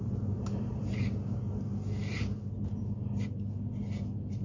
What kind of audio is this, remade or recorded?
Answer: recorded